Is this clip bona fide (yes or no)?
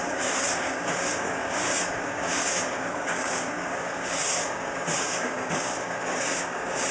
no